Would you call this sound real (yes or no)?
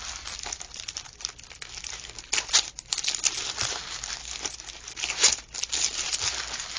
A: yes